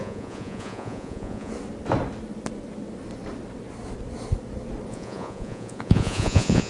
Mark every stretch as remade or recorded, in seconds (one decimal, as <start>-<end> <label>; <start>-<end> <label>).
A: 0.0-1.5 remade; 1.5-4.9 recorded; 4.9-6.7 remade